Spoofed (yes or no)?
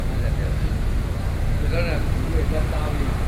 no